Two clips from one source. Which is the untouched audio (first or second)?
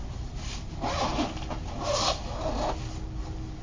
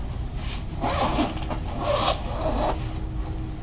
second